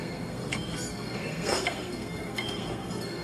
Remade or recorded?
remade